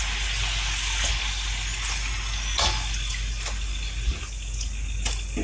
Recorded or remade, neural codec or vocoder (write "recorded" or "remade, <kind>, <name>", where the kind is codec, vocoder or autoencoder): recorded